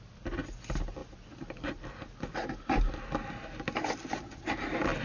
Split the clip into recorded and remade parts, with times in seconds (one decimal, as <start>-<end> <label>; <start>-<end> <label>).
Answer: 0.0-5.0 recorded